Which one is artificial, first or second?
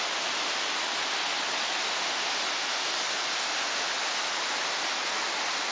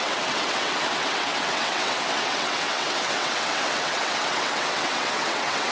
second